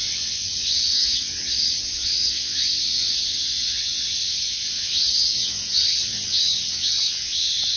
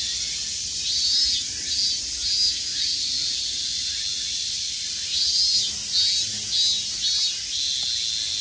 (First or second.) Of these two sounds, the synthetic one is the first